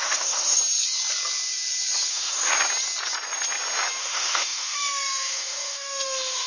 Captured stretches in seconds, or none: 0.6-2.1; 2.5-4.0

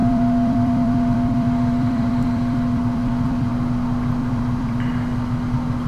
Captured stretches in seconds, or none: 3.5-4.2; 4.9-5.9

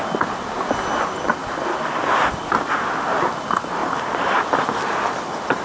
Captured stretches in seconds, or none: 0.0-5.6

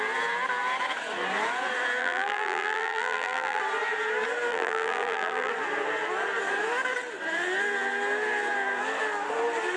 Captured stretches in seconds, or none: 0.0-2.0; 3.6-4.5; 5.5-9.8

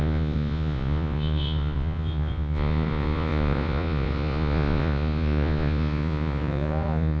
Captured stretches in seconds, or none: none